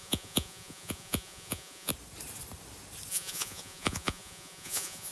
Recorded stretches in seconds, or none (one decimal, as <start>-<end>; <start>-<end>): 1.9-3.1